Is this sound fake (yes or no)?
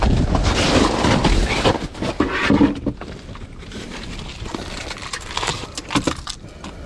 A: no